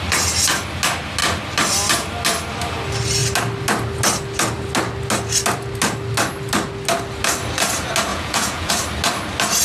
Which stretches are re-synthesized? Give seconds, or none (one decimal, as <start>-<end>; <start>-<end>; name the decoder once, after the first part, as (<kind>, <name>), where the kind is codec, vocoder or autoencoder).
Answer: 8.1-8.7 (vocoder, Vocos)